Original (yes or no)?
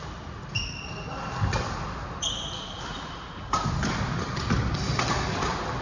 yes